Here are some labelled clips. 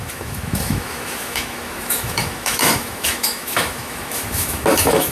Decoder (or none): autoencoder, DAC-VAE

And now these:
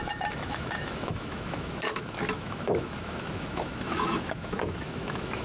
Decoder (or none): autoencoder, DAC-VAE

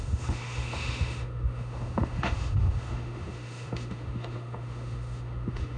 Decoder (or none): autoencoder, DAC-VAE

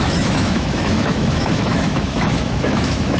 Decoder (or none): autoencoder, DAC-VAE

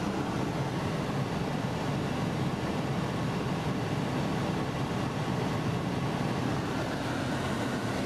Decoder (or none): none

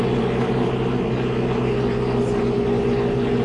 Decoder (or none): none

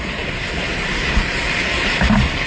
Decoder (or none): none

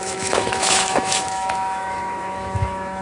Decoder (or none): autoencoder, DAC-VAE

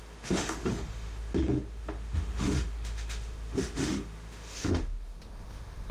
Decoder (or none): autoencoder, DAC-VAE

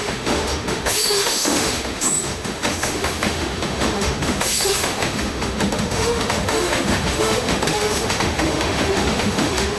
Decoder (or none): autoencoder, DAC-VAE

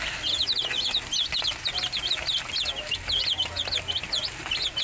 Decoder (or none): none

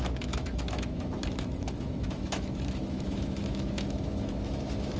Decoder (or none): autoencoder, DAC-VAE